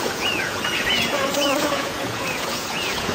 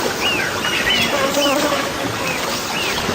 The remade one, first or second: first